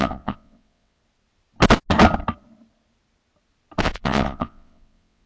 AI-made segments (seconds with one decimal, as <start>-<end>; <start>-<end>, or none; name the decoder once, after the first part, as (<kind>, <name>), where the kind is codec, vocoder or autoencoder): 0.0-1.0 (vocoder, WaveNeXt); 3.8-5.3